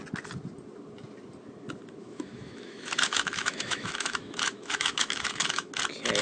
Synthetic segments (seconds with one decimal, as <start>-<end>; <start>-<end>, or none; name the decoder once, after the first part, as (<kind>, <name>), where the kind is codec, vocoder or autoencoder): 2.0-5.7 (autoencoder, DAC-VAE)

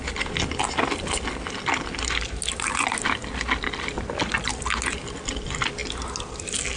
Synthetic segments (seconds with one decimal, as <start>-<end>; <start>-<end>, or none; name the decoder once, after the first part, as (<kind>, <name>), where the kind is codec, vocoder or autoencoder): none